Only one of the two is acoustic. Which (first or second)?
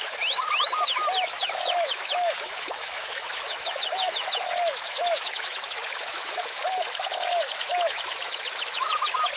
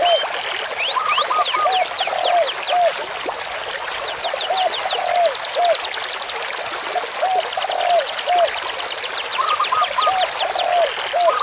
second